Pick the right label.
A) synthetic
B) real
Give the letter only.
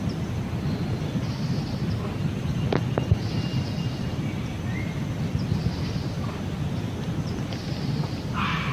B